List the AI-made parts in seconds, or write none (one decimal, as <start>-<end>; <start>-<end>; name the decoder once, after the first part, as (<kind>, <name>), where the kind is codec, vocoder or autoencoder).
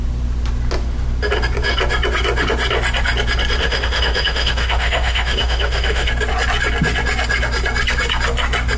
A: 3.6-6.1 (autoencoder, DAC-VAE)